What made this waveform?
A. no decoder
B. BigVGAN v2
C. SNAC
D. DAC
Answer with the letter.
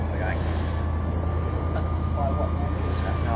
A